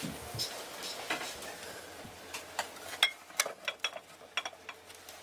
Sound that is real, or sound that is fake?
real